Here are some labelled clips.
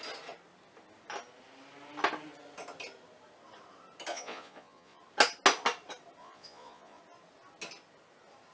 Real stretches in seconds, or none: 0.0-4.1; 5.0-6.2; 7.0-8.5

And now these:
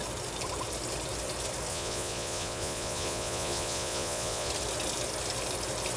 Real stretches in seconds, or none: 0.0-1.7; 4.5-6.0

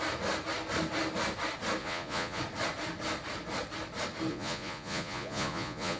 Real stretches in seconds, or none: 0.0-1.8; 2.4-4.3

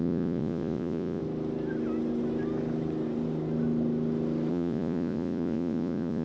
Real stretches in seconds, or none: 1.2-4.5

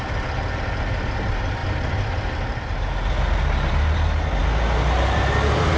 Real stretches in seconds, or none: 0.0-5.8